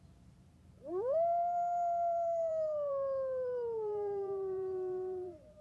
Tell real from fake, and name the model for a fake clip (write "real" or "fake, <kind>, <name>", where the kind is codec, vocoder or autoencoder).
fake, vocoder, BigVGAN v2